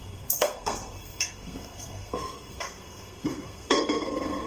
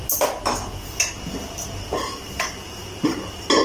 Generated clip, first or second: first